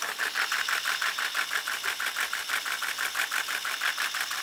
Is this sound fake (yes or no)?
no